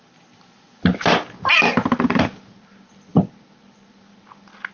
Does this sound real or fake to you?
real